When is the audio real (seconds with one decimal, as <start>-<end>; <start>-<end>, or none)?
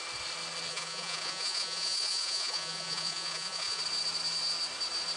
0.0-0.7; 3.8-5.2